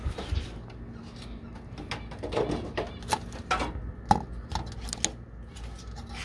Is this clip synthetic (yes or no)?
no